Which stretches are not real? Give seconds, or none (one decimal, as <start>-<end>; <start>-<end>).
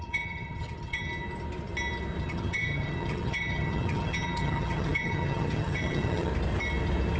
0.0-1.1; 2.2-6.3